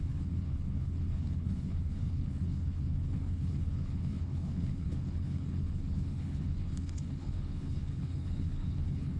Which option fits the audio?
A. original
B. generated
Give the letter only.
B